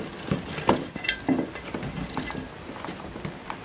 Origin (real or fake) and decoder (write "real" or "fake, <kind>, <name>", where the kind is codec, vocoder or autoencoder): real